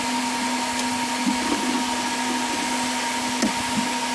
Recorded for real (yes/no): yes